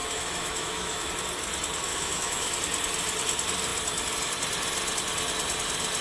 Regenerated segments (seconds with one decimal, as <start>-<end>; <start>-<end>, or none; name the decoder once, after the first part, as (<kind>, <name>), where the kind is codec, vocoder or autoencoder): 0.0-1.1 (autoencoder, DAC-VAE); 1.9-2.5